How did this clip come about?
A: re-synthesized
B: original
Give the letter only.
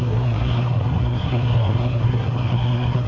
A